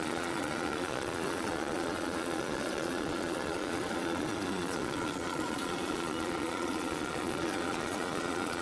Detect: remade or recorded remade